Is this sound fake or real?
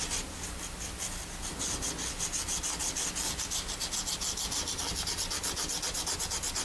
real